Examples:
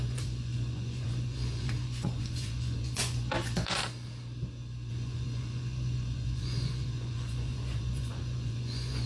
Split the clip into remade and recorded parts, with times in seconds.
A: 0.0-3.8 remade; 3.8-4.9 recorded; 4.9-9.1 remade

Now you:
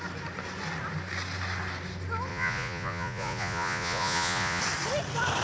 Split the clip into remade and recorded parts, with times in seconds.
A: 0.0-2.3 recorded; 2.3-4.6 remade; 4.6-5.4 recorded

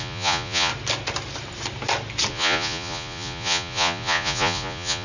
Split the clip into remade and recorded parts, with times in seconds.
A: 0.0-0.7 remade; 0.7-2.3 recorded; 2.3-5.0 remade

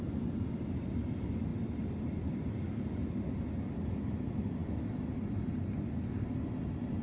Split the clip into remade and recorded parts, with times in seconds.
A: 0.0-7.0 recorded